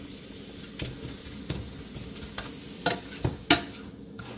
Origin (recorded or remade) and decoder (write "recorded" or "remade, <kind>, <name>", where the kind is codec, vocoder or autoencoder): recorded